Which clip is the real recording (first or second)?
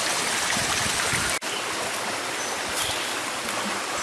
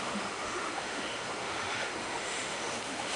first